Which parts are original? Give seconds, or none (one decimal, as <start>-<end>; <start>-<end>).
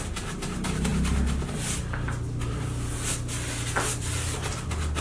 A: 0.0-5.0